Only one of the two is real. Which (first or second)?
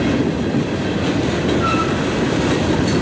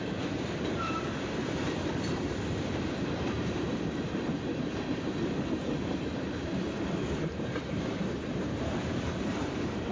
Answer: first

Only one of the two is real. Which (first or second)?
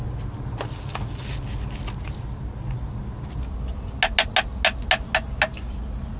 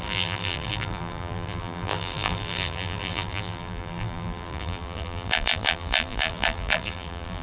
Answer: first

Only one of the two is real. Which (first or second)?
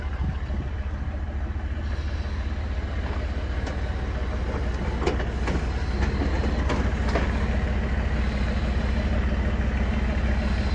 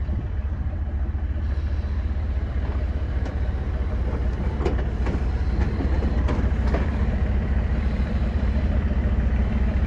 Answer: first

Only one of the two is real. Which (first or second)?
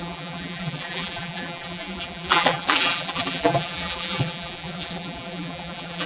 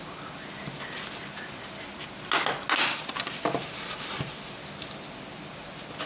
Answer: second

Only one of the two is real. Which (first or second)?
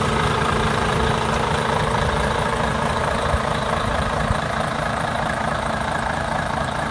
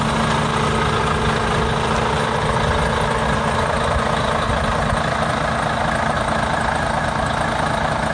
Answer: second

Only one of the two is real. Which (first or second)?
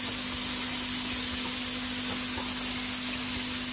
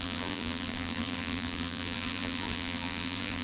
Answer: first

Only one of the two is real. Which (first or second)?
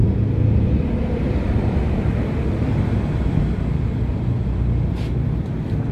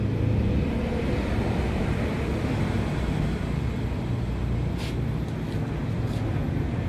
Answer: second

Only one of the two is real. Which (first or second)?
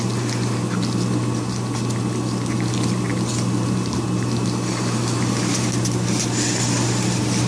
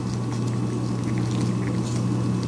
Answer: second